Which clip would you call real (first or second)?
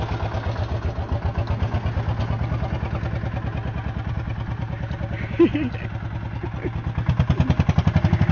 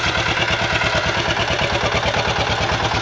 first